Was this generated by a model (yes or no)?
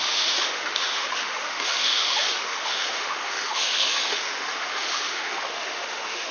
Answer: yes